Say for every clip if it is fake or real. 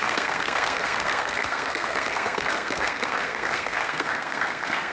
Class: fake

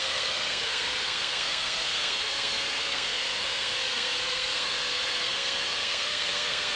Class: fake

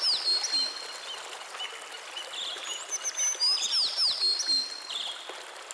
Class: real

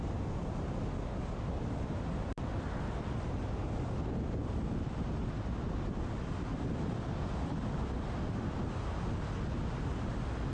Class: real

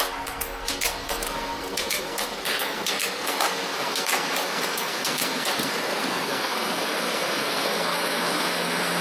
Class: fake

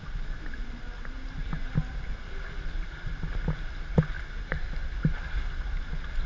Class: real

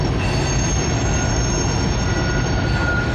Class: real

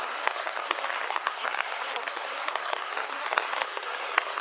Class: fake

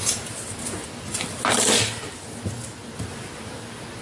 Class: real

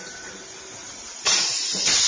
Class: real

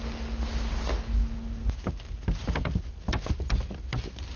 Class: real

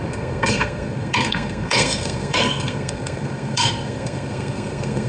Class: fake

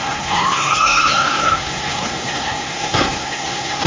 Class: fake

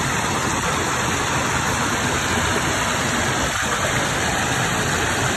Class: real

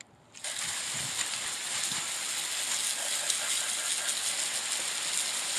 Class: real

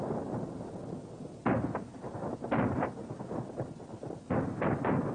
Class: real